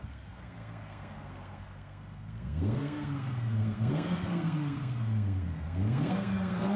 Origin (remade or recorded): remade